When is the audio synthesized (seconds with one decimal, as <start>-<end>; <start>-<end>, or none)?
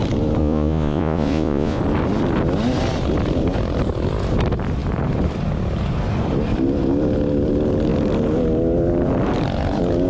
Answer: 0.4-1.8